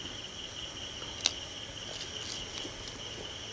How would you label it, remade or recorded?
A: recorded